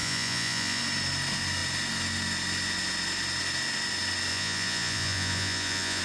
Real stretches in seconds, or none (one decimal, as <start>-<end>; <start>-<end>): 0.8-4.3